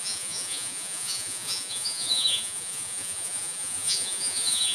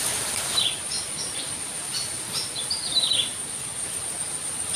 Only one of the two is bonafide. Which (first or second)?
second